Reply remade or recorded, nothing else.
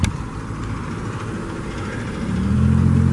recorded